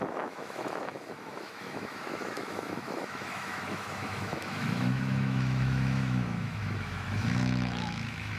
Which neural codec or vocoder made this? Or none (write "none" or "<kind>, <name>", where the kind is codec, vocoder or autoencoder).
autoencoder, DAC-VAE